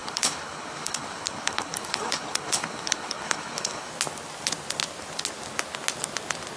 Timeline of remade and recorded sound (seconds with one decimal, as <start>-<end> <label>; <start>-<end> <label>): 0.0-3.9 remade; 3.9-6.6 recorded